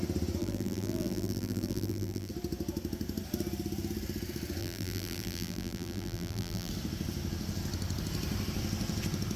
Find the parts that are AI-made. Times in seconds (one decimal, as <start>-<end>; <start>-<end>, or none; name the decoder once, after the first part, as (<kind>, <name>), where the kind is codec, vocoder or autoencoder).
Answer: 0.4-2.3 (vocoder, BigVGAN v2); 4.6-6.7